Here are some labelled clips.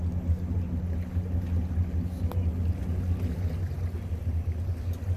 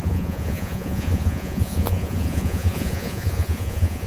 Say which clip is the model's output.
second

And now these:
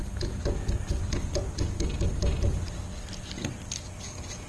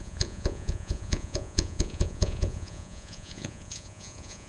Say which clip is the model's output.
second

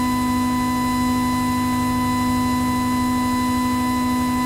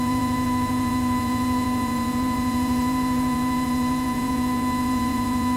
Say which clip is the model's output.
second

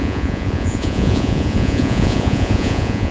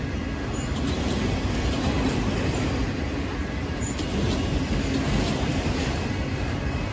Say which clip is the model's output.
first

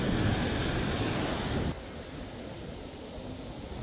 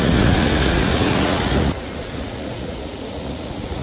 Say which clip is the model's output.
second